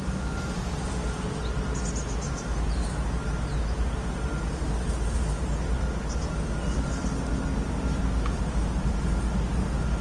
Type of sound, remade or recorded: recorded